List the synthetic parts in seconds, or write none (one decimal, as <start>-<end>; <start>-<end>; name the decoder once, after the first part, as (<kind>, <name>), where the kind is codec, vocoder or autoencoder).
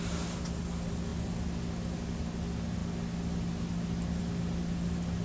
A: none